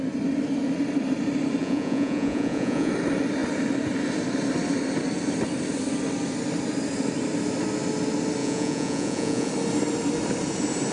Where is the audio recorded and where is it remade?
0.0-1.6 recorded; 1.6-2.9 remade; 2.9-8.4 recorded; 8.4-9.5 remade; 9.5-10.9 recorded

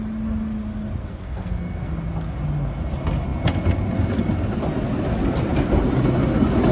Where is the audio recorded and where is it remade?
0.0-1.0 recorded; 1.0-1.9 remade; 1.9-6.7 recorded

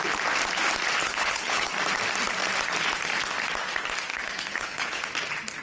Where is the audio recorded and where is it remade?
0.0-1.0 recorded; 1.0-1.7 remade; 1.7-4.1 recorded; 4.1-5.1 remade; 5.1-5.6 recorded

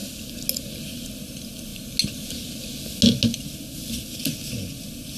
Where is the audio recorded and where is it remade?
0.0-0.8 recorded; 0.8-1.7 remade; 1.7-4.8 recorded; 4.8-5.2 remade

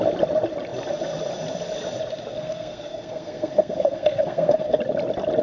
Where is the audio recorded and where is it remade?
0.0-2.3 recorded; 2.3-4.8 remade; 4.8-5.4 recorded

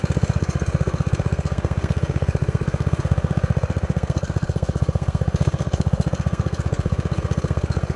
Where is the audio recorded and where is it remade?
0.0-8.0 remade

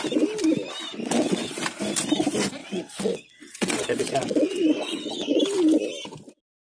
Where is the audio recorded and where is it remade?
0.0-0.9 recorded; 0.9-1.6 remade; 1.6-2.6 recorded; 2.6-5.4 remade; 5.4-6.7 recorded